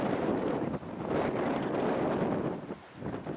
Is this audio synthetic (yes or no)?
no